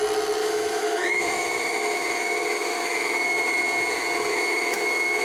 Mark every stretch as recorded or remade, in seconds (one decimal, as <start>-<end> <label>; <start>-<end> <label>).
0.0-0.4 recorded; 0.4-3.5 remade; 3.5-4.3 recorded; 4.3-5.2 remade

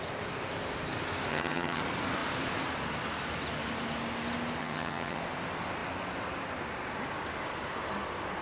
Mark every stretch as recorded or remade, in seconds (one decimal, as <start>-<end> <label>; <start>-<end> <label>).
0.0-1.3 recorded; 1.3-1.8 remade; 1.8-4.6 recorded; 4.6-5.2 remade; 5.2-8.4 recorded

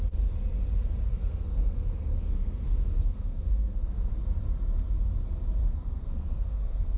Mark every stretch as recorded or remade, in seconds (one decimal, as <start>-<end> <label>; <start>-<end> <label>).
0.0-1.0 recorded; 1.0-4.1 remade; 4.1-5.6 recorded; 5.6-7.0 remade

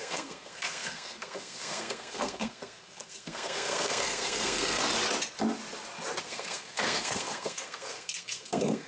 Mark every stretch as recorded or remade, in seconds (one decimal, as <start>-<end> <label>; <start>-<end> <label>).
0.0-4.8 remade; 4.8-6.2 recorded; 6.2-8.9 remade